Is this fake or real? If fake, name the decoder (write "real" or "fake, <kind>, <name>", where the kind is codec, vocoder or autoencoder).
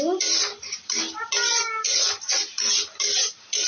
real